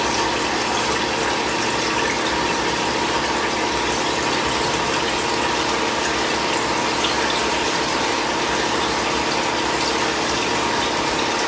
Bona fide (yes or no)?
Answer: yes